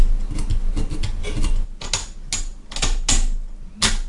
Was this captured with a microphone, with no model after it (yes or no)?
yes